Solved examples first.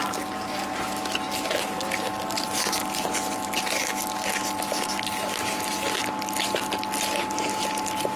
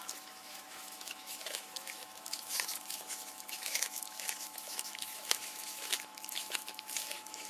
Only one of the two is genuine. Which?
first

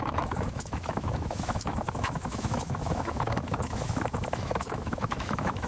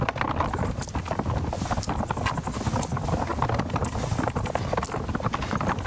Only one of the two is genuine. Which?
second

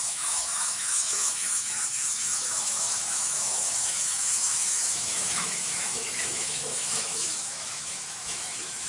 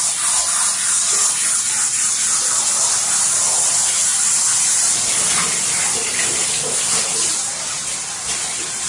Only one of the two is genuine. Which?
second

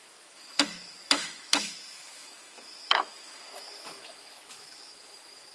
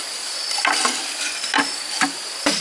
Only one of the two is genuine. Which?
second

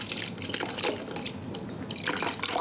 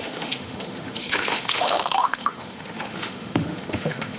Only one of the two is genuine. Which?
first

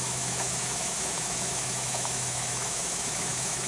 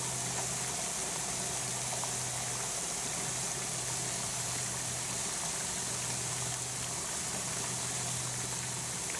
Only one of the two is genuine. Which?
second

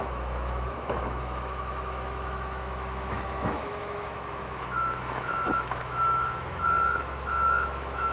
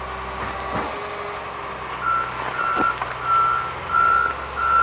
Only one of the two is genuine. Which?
second